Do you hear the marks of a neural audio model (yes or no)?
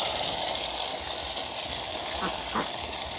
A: yes